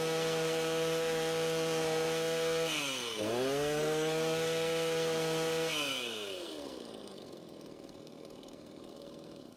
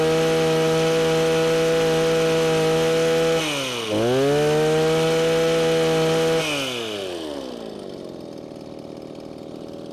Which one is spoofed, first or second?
first